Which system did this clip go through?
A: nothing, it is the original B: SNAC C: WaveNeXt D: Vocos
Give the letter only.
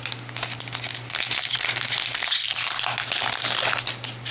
A